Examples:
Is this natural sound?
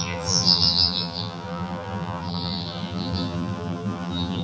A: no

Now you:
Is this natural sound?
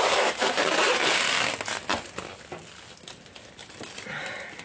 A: yes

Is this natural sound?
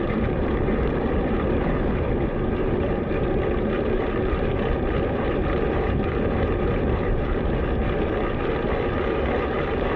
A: no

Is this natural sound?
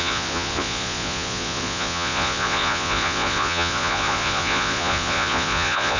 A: no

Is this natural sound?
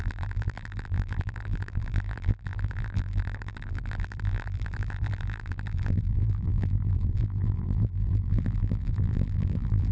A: no